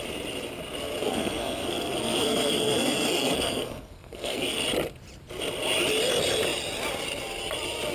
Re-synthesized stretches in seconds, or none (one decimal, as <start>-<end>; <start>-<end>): 1.0-4.6